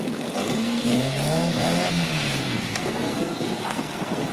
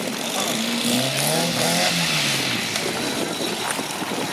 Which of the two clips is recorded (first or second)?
second